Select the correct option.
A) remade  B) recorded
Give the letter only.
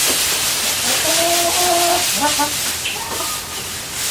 B